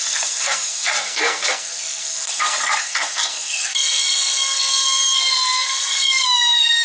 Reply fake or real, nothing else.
fake